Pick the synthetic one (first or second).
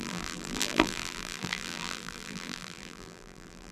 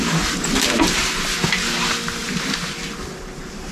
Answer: first